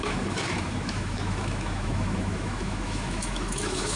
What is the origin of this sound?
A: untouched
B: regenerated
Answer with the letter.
B